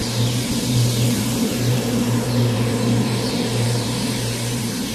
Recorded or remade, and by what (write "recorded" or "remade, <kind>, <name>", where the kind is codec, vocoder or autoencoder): remade, vocoder, BigVGAN v2